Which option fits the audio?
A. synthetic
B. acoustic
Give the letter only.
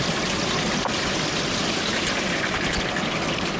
B